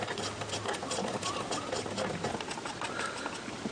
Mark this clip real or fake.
real